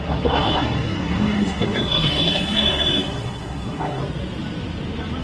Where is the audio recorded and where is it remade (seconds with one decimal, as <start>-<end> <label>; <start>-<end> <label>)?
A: 0.0-4.0 remade; 4.0-5.2 recorded